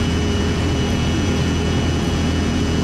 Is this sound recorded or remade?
remade